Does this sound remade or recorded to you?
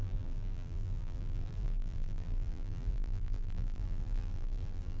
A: remade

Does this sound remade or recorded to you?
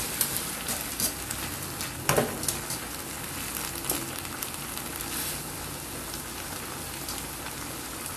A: recorded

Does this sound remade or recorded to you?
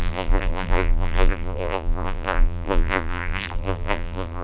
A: remade